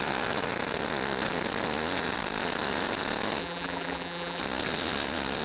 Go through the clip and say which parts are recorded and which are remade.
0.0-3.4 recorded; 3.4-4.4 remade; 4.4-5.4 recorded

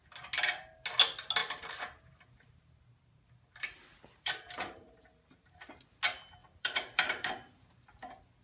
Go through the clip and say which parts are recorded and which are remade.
0.0-1.4 recorded; 1.4-5.7 remade; 5.7-6.4 recorded; 6.4-8.0 remade; 8.0-8.4 recorded

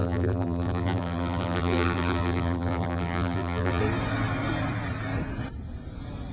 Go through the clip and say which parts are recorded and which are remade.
0.0-3.8 remade; 3.8-6.3 recorded

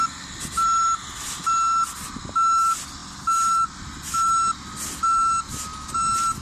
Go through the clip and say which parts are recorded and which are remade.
0.0-5.7 recorded; 5.7-6.4 remade

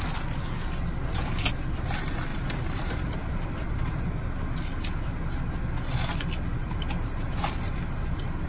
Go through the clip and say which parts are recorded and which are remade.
0.0-2.3 recorded; 2.3-4.0 remade; 4.0-6.6 recorded; 6.6-7.2 remade; 7.2-8.5 recorded

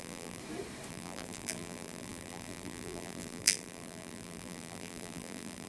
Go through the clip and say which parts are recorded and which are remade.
0.0-0.4 remade; 0.4-0.9 recorded; 0.9-5.7 remade

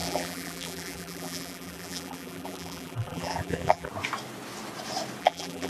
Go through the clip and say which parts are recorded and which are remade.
0.0-3.9 remade; 3.9-5.2 recorded; 5.2-5.7 remade